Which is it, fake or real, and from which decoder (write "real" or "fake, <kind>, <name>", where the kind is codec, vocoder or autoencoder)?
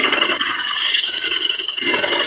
fake, codec, DAC